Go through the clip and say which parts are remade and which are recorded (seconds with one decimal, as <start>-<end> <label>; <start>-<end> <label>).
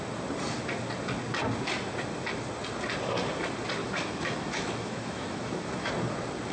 0.0-3.8 recorded; 3.8-5.9 remade; 5.9-6.5 recorded